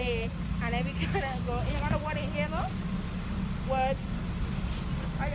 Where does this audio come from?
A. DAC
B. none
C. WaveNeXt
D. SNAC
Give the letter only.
B